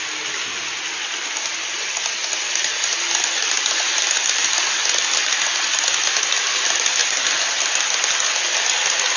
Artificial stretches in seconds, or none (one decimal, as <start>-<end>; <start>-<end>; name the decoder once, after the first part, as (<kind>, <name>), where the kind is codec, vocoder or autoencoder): 7.0-7.8 (vocoder, BigVGAN v2)